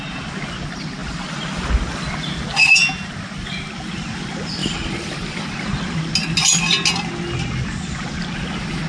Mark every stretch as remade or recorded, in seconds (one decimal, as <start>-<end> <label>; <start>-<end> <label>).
0.0-1.0 recorded; 1.0-2.1 remade; 2.1-4.6 recorded; 4.6-6.0 remade; 6.0-8.9 recorded